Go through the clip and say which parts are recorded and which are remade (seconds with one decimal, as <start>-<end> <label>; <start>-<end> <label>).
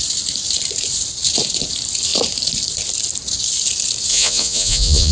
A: 0.0-4.1 recorded; 4.1-5.1 remade